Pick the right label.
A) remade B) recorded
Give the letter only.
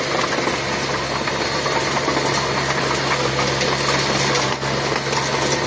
B